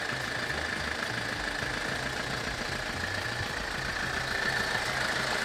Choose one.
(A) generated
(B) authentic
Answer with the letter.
B